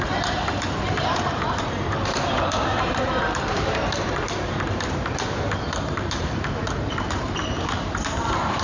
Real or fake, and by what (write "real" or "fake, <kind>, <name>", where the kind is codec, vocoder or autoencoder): fake, vocoder, BigVGAN v2